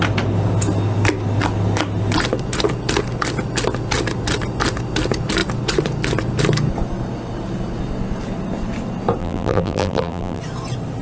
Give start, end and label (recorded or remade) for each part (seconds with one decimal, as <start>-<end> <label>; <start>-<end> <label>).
0.0-9.2 recorded; 9.2-10.4 remade; 10.4-11.0 recorded